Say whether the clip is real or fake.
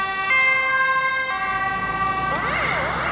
real